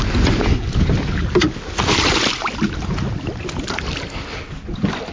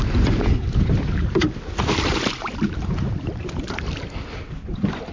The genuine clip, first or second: first